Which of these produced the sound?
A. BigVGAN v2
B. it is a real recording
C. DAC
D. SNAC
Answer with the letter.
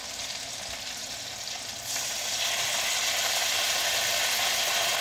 B